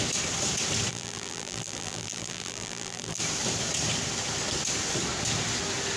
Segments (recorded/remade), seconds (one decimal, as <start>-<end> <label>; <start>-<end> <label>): 0.0-0.9 recorded; 0.9-3.2 remade; 3.2-6.0 recorded